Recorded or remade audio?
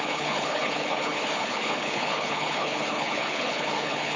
remade